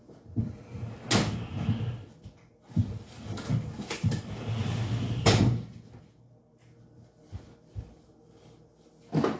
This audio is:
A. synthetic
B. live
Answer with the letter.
B